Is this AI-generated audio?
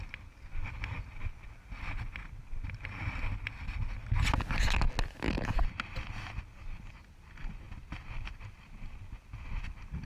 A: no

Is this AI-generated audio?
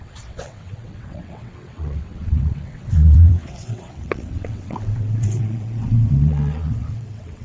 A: yes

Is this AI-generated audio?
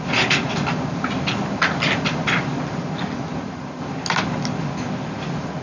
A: no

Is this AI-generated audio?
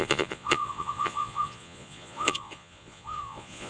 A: yes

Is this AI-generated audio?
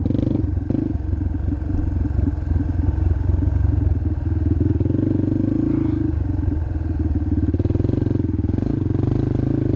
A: no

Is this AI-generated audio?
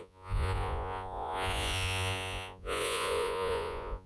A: yes